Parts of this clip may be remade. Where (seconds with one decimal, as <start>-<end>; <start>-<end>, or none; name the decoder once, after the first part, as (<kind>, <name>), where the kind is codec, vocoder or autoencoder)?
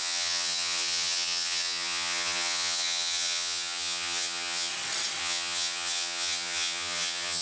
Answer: 0.0-4.7 (vocoder, HiFi-GAN); 5.2-7.4